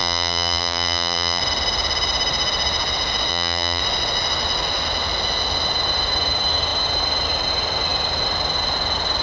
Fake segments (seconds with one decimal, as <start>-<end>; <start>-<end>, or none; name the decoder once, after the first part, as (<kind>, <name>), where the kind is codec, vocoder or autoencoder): 0.0-1.4 (vocoder, BigVGAN v2); 3.3-3.8